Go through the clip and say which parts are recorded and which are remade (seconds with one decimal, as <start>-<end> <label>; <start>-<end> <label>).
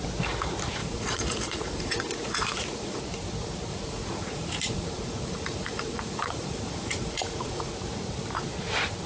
0.0-0.8 recorded; 0.8-3.0 remade; 3.0-3.7 recorded; 3.7-7.7 remade; 7.7-9.1 recorded